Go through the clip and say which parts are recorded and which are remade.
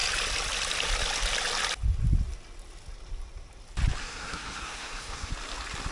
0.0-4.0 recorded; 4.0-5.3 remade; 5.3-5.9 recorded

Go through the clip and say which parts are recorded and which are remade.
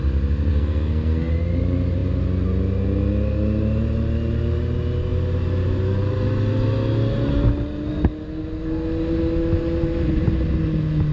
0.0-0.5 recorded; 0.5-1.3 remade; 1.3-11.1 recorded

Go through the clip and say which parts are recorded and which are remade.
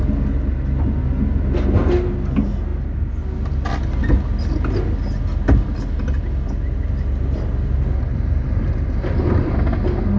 0.0-8.1 recorded; 8.1-9.5 remade; 9.5-10.2 recorded